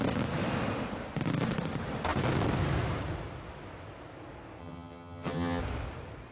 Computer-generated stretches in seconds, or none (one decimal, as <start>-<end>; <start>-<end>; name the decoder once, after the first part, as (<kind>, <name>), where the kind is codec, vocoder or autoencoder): 4.6-5.6 (vocoder, HiFi-GAN)